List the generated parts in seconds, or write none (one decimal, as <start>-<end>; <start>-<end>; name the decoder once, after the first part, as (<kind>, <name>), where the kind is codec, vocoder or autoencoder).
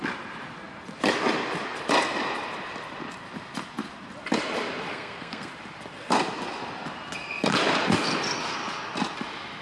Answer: 4.9-5.5 (codec, SNAC)